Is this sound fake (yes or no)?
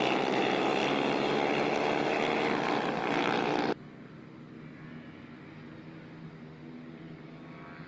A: no